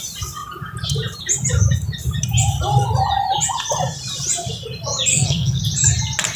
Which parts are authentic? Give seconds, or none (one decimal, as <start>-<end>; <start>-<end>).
0.0-5.1; 5.6-6.4